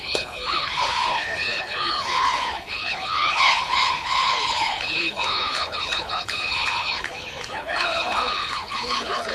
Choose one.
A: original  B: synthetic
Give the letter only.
B